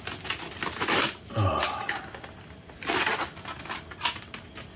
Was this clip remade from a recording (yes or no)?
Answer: no